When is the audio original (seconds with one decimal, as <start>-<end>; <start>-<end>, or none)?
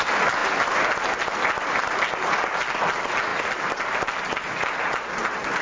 0.0-5.6